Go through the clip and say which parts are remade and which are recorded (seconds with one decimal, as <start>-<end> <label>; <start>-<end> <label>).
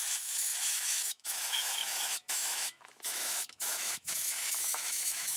0.0-5.4 remade